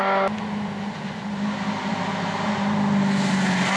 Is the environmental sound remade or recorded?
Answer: recorded